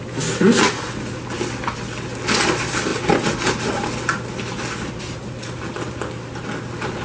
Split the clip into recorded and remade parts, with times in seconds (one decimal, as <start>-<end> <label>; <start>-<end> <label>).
0.0-7.0 recorded